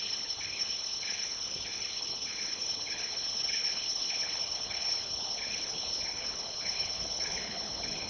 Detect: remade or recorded remade